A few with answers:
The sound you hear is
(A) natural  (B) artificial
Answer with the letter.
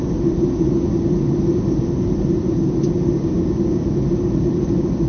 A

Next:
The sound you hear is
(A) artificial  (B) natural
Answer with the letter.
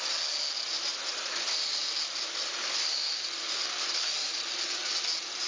B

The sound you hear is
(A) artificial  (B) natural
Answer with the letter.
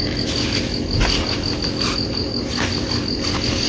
B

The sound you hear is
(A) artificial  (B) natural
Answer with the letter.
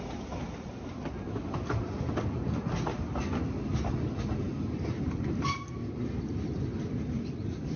B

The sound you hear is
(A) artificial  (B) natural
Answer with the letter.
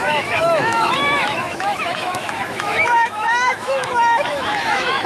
A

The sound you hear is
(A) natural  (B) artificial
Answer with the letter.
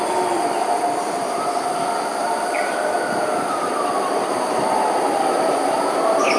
A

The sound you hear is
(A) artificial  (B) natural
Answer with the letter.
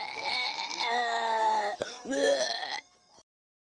A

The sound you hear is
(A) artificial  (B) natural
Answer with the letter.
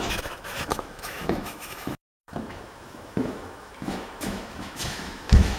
A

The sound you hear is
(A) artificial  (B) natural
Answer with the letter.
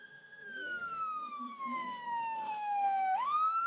A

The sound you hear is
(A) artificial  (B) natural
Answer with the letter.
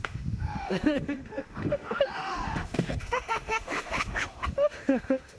A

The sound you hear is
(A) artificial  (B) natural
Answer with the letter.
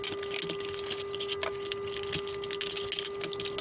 B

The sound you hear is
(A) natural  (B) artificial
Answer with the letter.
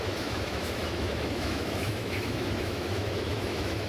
B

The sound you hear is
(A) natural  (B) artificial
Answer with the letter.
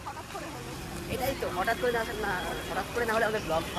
A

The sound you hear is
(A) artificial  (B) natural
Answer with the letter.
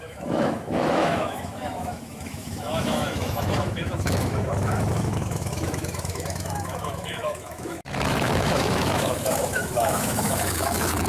A